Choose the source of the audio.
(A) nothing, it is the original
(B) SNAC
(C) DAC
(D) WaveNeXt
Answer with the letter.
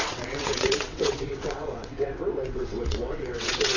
D